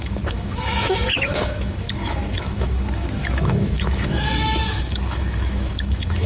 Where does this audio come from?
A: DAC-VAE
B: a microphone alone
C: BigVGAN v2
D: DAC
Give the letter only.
A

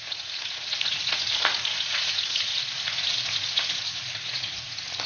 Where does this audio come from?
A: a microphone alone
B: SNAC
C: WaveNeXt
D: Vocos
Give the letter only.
D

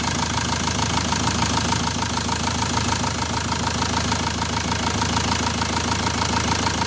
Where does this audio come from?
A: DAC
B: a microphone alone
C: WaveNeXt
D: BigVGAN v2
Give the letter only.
B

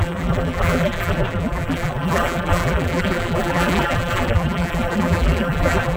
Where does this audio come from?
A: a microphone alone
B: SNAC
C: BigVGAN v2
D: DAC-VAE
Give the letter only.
C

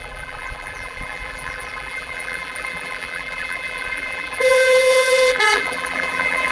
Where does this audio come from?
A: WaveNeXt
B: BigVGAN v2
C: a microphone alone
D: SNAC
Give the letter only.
B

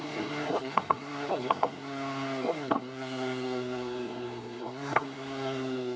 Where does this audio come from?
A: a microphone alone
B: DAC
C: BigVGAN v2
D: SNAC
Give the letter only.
D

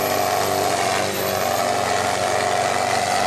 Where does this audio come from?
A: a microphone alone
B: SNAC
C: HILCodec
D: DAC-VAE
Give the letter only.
A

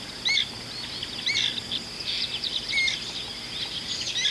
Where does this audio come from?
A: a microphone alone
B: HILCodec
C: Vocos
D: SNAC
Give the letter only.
A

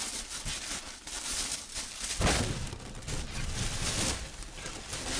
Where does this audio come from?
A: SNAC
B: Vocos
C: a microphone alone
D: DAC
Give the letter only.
C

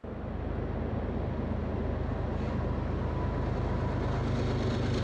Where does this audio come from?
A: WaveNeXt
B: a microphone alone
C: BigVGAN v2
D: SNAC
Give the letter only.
B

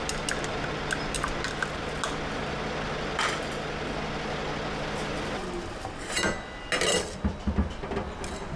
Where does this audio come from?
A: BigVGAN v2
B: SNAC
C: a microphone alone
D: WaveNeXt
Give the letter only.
C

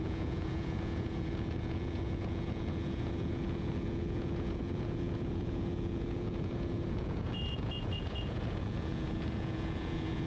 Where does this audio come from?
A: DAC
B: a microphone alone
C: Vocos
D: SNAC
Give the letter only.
C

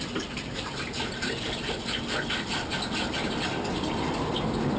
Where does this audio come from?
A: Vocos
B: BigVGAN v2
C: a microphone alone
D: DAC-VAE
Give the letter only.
C